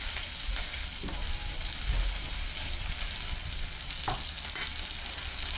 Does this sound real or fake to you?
real